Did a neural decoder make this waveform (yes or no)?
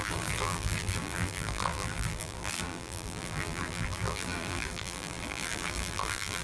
yes